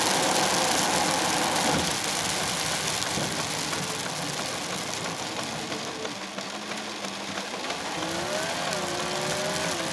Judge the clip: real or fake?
real